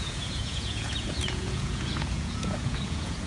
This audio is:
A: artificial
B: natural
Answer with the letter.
A